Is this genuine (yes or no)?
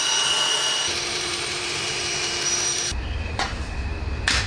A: no